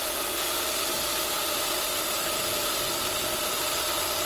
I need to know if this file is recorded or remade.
recorded